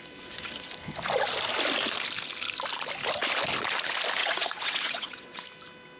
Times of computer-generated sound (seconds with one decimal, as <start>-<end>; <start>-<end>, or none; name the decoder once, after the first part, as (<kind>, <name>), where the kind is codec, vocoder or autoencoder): 4.2-5.4 (vocoder, WaveNeXt)